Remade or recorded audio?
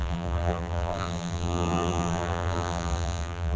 remade